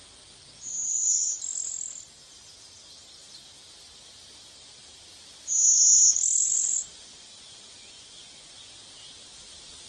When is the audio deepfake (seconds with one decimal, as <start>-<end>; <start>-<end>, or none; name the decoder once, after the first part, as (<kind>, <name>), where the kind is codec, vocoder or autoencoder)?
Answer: 6.3-8.7 (vocoder, Vocos)